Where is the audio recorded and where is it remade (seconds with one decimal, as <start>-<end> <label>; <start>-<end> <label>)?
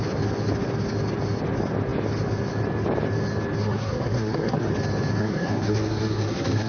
0.0-3.6 recorded; 3.6-4.7 remade; 4.7-5.2 recorded; 5.2-6.7 remade